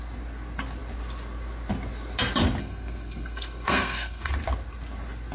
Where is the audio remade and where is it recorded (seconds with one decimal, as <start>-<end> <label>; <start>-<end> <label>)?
0.0-2.6 recorded; 2.6-4.3 remade; 4.3-5.3 recorded